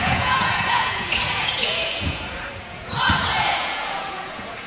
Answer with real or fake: fake